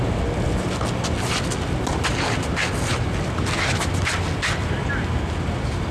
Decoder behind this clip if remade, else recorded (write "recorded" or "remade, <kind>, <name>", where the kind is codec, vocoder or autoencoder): recorded